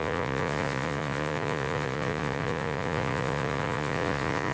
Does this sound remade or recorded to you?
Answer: remade